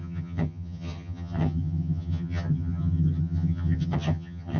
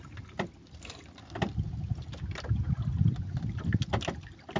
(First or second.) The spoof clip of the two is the first